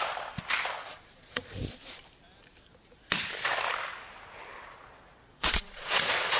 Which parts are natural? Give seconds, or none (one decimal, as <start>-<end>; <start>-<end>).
0.0-0.8; 1.5-5.3